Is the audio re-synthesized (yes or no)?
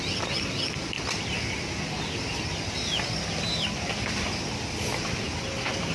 no